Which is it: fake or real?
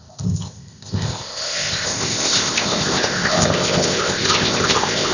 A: fake